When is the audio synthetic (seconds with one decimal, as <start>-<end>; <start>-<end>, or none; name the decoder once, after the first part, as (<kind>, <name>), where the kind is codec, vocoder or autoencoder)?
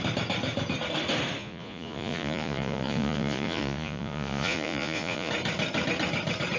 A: 1.4-5.3 (vocoder, Vocos)